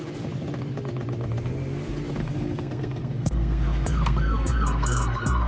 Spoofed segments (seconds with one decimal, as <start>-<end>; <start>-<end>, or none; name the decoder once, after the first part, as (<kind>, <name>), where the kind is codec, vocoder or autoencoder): 2.2-5.5 (codec, SNAC)